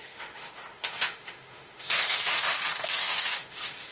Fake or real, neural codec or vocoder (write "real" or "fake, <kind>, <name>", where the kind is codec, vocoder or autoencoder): fake, autoencoder, DAC-VAE